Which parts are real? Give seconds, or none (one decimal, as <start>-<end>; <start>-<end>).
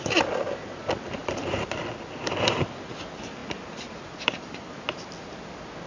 0.0-1.2; 1.8-3.4; 4.8-5.9